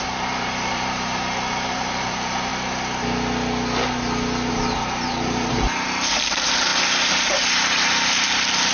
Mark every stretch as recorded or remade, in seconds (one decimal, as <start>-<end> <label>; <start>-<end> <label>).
0.0-2.5 remade; 2.5-4.5 recorded; 4.5-6.7 remade; 6.7-7.5 recorded; 7.5-8.7 remade